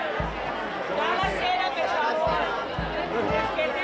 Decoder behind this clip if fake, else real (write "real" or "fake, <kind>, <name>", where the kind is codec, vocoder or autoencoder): real